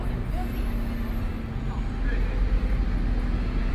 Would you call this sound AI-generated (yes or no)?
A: no